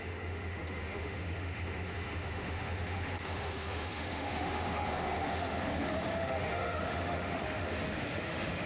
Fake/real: fake